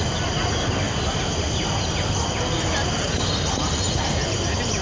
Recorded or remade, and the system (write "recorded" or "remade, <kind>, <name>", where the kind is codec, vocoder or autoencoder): recorded